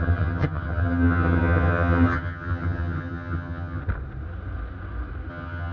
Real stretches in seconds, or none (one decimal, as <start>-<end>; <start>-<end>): 3.8-5.3